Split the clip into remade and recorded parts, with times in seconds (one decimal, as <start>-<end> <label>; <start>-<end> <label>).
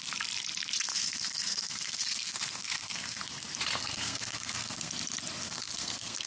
0.0-0.9 recorded; 0.9-3.2 remade; 3.2-3.8 recorded; 3.8-4.9 remade; 4.9-5.4 recorded; 5.4-6.3 remade